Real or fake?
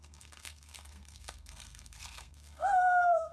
fake